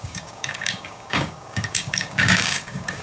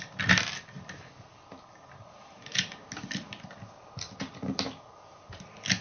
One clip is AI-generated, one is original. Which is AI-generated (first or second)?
first